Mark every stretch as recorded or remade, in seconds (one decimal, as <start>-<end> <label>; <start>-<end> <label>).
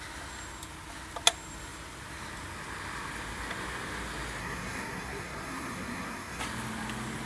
0.0-4.4 recorded; 4.4-6.4 remade; 6.4-7.3 recorded